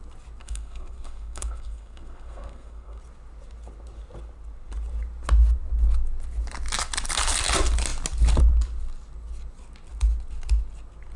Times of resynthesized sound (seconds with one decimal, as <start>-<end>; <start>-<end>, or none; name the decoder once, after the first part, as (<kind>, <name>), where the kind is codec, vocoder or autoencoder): 0.4-3.0 (codec, SNAC)